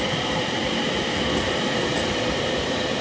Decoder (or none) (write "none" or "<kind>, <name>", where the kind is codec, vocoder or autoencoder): vocoder, BigVGAN v2